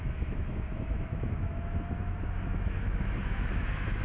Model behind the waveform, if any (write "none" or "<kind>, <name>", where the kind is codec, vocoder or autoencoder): autoencoder, DAC-VAE